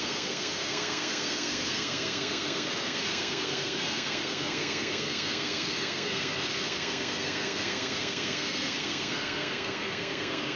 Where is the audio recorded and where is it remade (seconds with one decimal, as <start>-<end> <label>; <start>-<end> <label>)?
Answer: 0.0-10.6 remade